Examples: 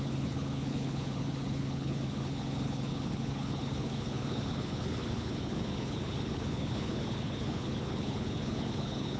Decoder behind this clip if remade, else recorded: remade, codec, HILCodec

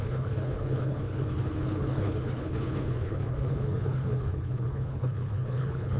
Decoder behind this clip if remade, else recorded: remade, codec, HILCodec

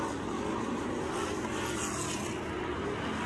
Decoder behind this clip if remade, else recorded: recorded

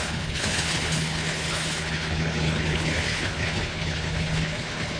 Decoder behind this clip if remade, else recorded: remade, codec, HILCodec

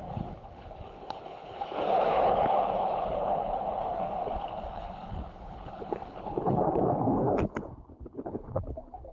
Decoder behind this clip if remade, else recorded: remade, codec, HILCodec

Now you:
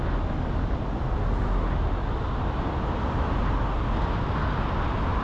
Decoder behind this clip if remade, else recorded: recorded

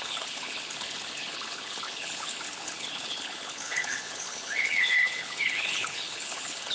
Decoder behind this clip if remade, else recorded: remade, codec, HILCodec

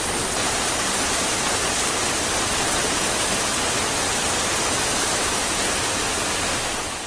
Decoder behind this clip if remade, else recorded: recorded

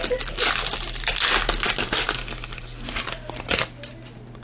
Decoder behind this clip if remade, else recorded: recorded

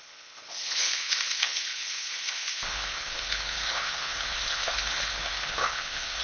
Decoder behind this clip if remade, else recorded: remade, codec, HILCodec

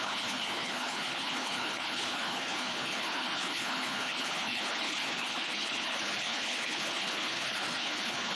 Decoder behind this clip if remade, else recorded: remade, codec, HILCodec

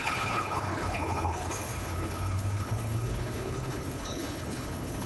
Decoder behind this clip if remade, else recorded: remade, codec, HILCodec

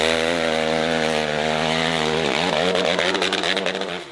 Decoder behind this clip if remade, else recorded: recorded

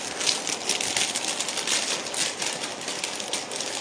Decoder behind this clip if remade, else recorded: recorded